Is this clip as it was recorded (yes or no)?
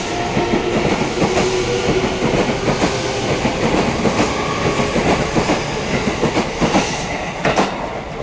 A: yes